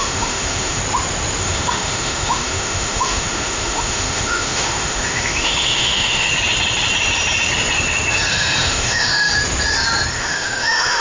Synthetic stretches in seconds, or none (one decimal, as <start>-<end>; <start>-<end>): 0.0-0.8; 1.4-6.3; 8.3-9.3; 10.2-11.0